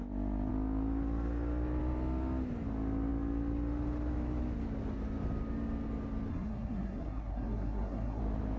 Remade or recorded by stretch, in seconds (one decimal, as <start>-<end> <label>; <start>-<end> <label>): 0.0-6.3 recorded; 6.3-8.2 remade; 8.2-8.6 recorded